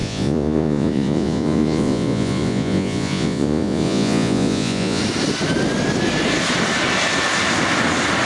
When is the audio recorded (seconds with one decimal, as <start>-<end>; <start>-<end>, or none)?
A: 5.0-8.3